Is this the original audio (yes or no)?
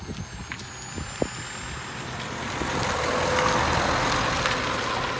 yes